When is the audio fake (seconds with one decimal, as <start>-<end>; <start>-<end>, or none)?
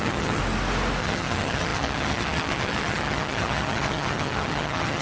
0.0-0.4; 1.0-5.0